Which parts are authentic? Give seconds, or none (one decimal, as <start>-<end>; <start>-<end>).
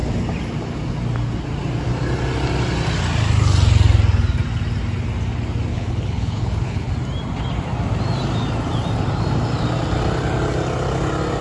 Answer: 0.0-5.7; 6.9-11.4